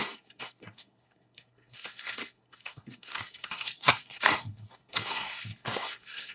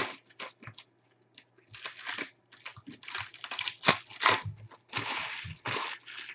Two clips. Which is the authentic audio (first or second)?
second